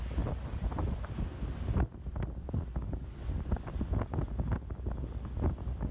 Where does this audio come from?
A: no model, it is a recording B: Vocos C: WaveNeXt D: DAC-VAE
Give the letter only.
A